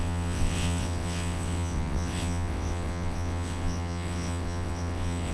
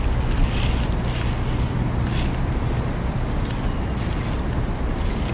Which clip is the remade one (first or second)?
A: first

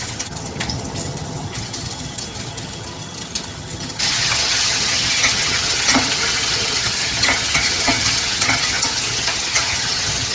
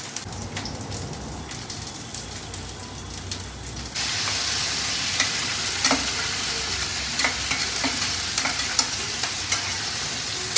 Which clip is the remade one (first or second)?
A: first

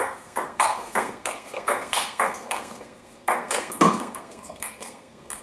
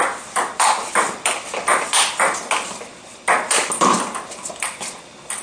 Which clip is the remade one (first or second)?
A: first